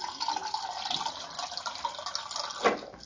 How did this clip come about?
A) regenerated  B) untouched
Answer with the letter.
B